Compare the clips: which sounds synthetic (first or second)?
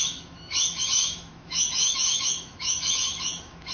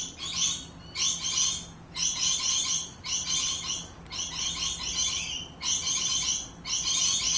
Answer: first